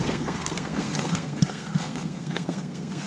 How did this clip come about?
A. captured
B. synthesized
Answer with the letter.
B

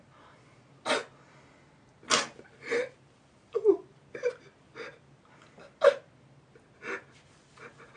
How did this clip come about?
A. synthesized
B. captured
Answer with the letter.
B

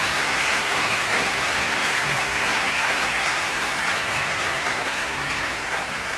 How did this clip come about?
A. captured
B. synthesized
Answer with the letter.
B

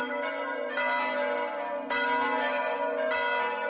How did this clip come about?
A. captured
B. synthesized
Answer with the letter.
A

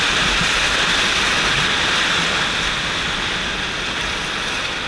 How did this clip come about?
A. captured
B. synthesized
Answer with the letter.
A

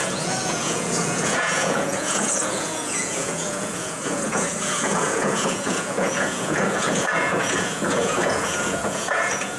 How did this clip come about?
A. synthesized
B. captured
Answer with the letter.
A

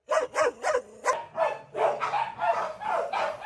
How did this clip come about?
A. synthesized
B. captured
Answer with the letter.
B